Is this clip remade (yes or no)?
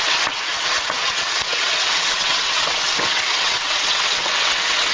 yes